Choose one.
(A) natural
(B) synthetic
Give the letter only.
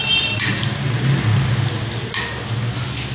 A